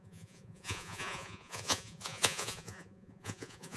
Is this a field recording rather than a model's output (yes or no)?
no